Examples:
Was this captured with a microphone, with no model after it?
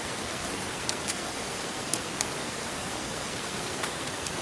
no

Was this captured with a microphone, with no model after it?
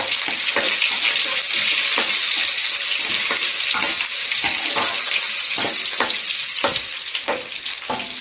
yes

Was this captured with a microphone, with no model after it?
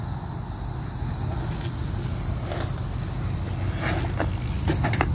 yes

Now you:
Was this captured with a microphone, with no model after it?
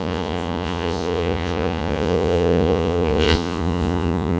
no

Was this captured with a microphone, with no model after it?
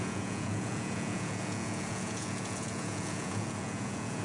no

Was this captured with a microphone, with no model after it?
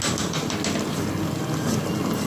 yes